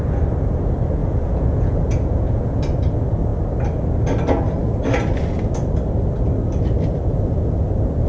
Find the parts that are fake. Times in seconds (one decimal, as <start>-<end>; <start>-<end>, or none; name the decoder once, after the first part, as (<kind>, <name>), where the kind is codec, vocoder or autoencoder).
1.0-2.6 (vocoder, Vocos)